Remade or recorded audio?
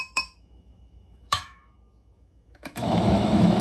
remade